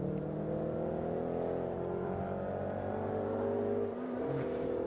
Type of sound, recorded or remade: recorded